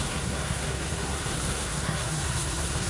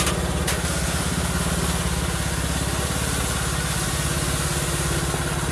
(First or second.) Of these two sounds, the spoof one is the first